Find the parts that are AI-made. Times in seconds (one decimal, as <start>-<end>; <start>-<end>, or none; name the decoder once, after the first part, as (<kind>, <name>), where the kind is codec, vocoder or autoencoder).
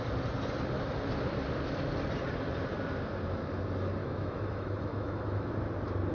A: 4.0-5.5 (autoencoder, DAC-VAE)